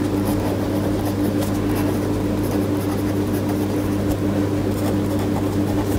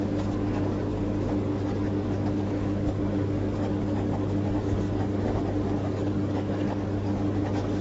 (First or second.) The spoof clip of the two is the second